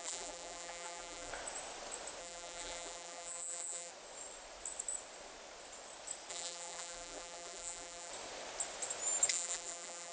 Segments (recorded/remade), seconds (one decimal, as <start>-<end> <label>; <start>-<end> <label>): 0.0-1.3 remade; 1.3-2.2 recorded; 2.2-3.9 remade; 3.9-6.3 recorded; 6.3-8.1 remade; 8.1-9.3 recorded; 9.3-10.1 remade